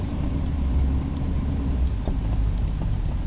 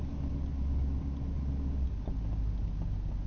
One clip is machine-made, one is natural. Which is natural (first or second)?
second